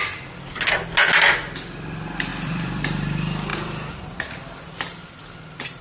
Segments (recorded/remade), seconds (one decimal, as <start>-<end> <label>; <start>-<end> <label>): 0.0-0.7 remade; 0.7-2.3 recorded; 2.3-2.8 remade; 2.8-3.5 recorded; 3.5-4.3 remade; 4.3-5.8 recorded

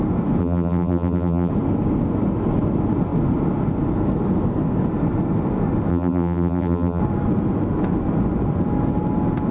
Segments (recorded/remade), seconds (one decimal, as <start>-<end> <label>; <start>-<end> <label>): 0.0-0.4 recorded; 0.4-1.5 remade; 1.5-5.9 recorded; 5.9-7.0 remade; 7.0-9.5 recorded

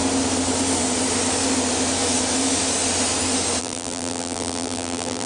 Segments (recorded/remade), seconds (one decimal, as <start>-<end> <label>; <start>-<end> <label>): 0.0-3.6 recorded; 3.6-5.3 remade

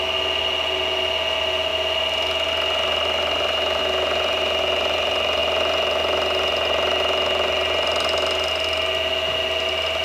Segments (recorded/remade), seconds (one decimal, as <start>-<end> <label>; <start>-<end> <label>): 0.0-10.0 recorded

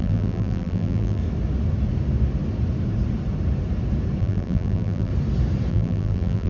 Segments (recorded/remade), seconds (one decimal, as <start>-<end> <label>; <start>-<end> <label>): 0.0-1.2 remade; 1.2-4.2 recorded; 4.2-5.1 remade; 5.1-5.7 recorded; 5.7-6.5 remade

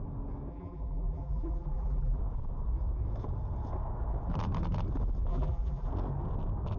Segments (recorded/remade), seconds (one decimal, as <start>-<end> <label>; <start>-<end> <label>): 0.0-0.5 recorded; 0.5-2.2 remade; 2.2-5.3 recorded; 5.3-5.9 remade; 5.9-6.8 recorded

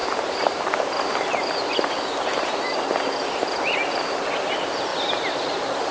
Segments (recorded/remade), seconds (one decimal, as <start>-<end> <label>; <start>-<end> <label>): 0.0-1.5 remade; 1.5-4.9 recorded; 4.9-5.9 remade